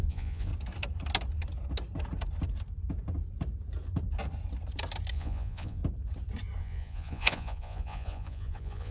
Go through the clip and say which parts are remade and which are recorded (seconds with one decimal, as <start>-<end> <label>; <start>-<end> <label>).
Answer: 0.0-0.5 remade; 0.5-5.1 recorded; 5.1-5.8 remade; 5.8-6.6 recorded; 6.6-8.9 remade